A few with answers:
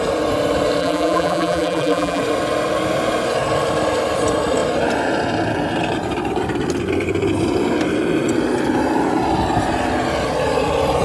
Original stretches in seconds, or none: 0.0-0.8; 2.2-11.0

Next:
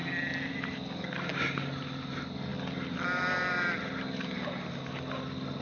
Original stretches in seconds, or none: 0.5-2.5; 4.8-5.6